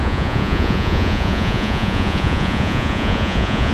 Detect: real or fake fake